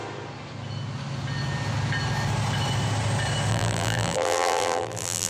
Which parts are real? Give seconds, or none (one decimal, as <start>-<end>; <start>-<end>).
0.0-3.5